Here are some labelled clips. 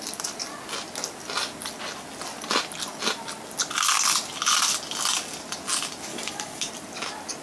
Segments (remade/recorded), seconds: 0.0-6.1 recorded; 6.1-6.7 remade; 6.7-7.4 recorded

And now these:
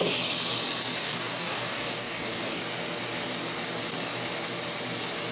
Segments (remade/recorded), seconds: 0.0-1.0 recorded; 1.0-2.6 remade; 2.6-5.3 recorded

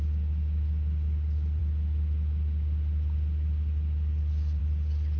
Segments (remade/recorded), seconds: 0.0-5.2 recorded

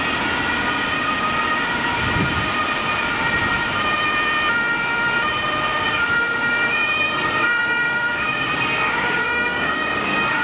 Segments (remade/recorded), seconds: 0.0-5.7 recorded; 5.7-10.4 remade

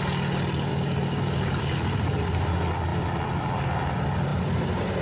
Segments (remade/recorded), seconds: 0.0-0.7 recorded; 0.7-1.5 remade; 1.5-5.0 recorded

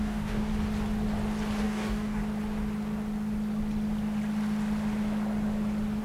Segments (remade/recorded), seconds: 0.0-0.5 remade; 0.5-1.6 recorded; 1.6-2.2 remade; 2.2-6.0 recorded

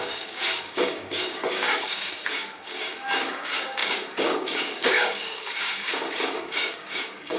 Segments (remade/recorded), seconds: 0.0-7.4 remade